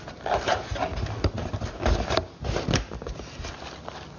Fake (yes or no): no